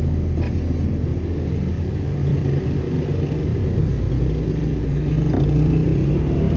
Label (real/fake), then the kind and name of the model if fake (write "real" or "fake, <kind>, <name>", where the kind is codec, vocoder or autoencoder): real